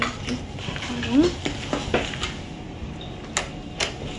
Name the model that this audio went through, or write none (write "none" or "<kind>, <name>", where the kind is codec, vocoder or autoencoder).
none